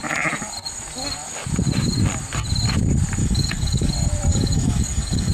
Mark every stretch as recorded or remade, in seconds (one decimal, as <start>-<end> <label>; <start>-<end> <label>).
0.0-3.2 recorded; 3.2-3.9 remade; 3.9-4.3 recorded; 4.3-5.3 remade